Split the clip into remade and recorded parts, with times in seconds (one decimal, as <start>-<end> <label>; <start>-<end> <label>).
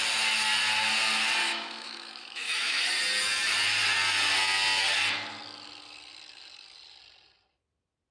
0.0-1.4 recorded; 1.4-2.8 remade; 2.8-8.1 recorded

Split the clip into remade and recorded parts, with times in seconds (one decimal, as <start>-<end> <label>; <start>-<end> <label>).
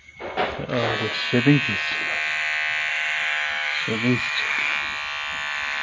0.0-2.9 recorded; 2.9-4.7 remade; 4.7-5.8 recorded